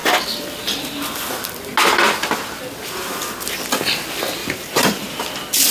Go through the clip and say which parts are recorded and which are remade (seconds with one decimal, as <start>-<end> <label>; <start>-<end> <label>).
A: 0.0-4.4 recorded; 4.4-5.2 remade; 5.2-5.7 recorded